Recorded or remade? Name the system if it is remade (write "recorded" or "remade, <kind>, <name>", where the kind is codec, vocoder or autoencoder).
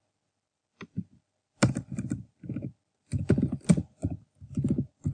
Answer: recorded